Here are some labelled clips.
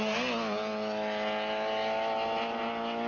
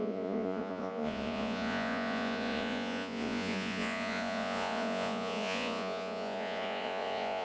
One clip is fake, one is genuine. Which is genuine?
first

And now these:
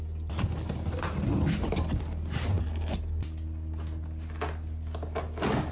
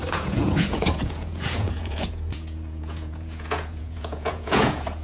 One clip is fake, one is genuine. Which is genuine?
first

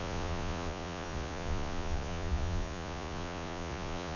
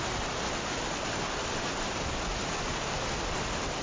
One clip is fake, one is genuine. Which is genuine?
second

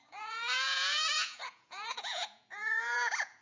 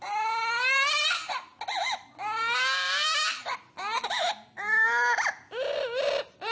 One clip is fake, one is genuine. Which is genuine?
second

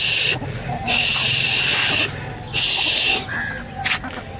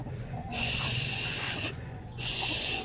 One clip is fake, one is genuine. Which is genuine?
first